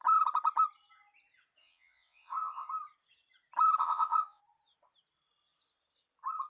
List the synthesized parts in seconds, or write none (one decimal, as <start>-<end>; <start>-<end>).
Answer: 1.6-2.7; 3.8-4.4

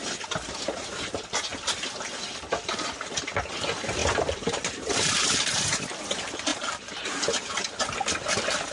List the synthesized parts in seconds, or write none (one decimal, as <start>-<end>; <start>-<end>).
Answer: 4.0-5.7; 6.5-7.5

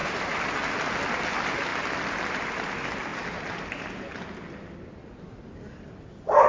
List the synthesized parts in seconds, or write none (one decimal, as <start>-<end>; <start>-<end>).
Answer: 0.0-0.7; 1.7-2.7

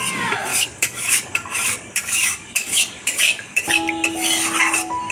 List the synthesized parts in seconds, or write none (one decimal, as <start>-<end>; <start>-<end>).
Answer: 0.5-3.6